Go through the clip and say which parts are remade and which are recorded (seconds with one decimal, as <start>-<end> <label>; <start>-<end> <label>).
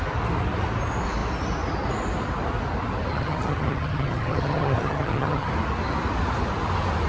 0.0-3.1 recorded; 3.1-5.5 remade; 5.5-7.1 recorded